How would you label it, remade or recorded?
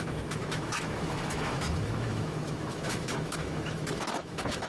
remade